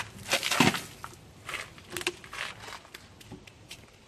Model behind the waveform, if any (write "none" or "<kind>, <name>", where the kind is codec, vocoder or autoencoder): none